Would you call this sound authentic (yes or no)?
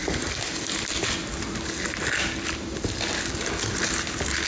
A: yes